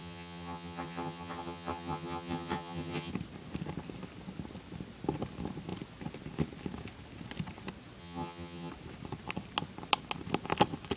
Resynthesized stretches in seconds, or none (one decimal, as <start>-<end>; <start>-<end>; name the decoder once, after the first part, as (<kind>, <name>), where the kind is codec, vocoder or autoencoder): 0.0-3.1 (vocoder, HiFi-GAN); 8.0-8.7